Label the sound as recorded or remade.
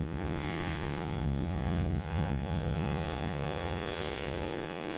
remade